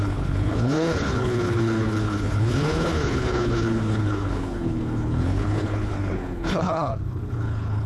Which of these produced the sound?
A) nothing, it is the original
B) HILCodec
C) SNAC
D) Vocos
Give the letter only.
B